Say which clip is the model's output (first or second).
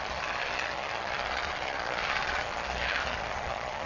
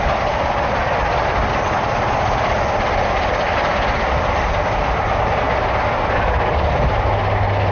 first